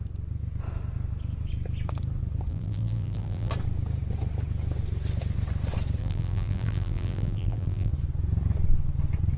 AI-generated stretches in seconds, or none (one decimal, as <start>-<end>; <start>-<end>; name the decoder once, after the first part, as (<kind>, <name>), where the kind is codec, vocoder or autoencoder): 2.5-3.5 (vocoder, BigVGAN v2); 6.0-7.9